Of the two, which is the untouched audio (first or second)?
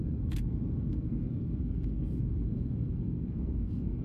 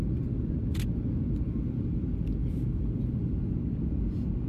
second